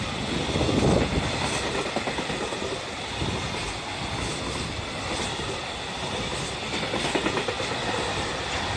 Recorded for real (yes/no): yes